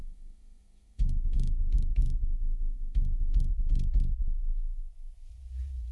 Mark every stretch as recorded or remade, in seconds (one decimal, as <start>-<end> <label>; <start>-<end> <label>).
0.0-3.5 remade; 3.5-5.9 recorded